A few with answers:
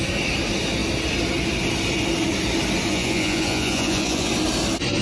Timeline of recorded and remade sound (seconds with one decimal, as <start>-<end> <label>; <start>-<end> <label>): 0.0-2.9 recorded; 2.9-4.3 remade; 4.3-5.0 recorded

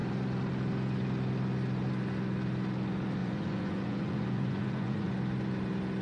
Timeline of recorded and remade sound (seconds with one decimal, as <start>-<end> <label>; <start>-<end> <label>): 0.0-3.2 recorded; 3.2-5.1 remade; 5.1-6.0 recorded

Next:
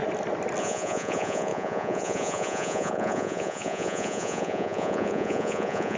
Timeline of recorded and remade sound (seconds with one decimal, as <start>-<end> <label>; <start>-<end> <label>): 0.0-0.6 recorded; 0.6-6.0 remade

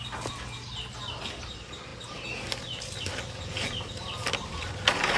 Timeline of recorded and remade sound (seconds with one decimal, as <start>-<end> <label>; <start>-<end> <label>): 0.0-5.2 recorded

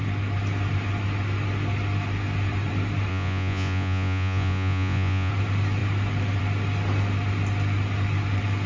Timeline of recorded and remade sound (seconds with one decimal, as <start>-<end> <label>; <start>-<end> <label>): 0.0-3.1 recorded; 3.1-5.3 remade; 5.3-8.7 recorded

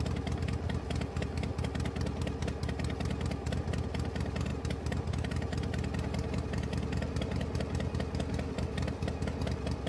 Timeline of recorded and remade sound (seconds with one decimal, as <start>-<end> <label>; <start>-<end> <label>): 0.0-9.9 recorded